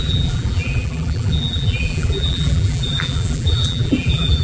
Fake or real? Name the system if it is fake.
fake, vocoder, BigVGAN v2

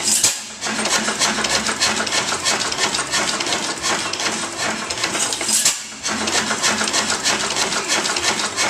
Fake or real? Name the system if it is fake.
real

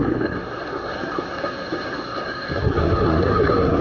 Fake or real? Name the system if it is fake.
fake, codec, SNAC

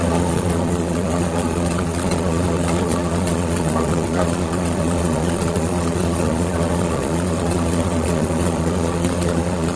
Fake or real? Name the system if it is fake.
fake, vocoder, Vocos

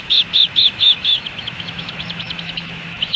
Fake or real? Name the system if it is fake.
fake, autoencoder, DAC-VAE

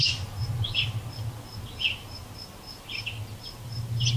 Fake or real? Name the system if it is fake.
real